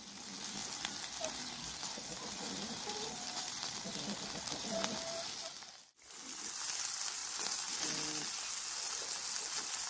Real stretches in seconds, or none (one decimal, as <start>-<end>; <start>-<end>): 0.0-2.1; 4.2-7.2; 7.7-9.9